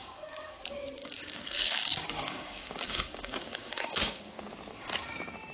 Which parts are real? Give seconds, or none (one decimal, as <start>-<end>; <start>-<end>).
0.6-1.0; 4.3-5.5